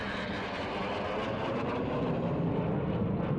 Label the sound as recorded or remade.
recorded